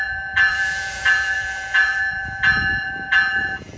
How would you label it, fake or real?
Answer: fake